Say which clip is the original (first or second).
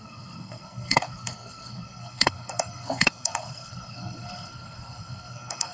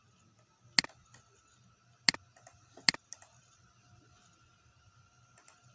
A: second